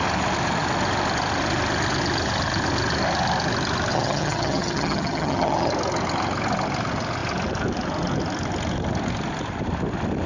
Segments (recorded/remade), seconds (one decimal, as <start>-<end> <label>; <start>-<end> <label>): 0.0-3.9 recorded; 3.9-5.7 remade; 5.7-10.3 recorded